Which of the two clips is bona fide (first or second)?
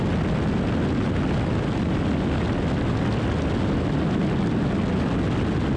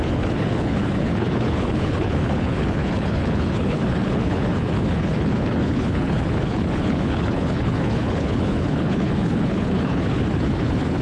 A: first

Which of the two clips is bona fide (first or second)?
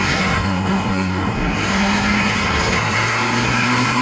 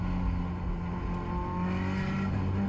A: second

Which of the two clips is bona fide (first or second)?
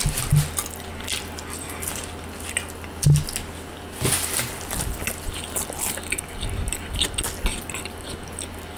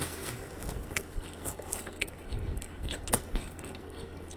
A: first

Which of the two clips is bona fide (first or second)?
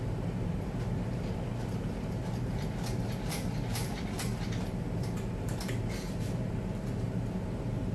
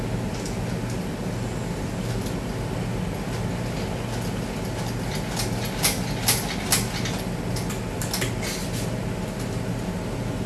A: second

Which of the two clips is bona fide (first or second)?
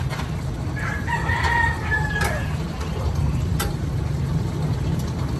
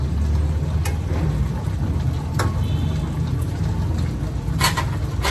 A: second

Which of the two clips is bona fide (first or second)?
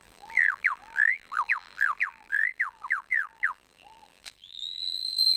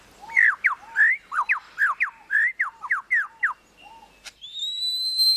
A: second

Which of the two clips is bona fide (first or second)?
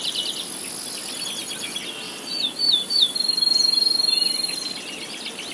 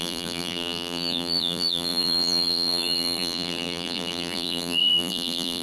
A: first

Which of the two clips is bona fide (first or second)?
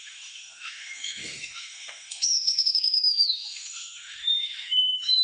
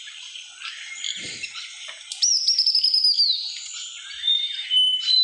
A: second